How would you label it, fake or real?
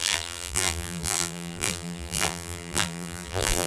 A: fake